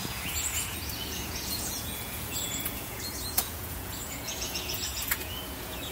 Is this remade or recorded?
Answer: remade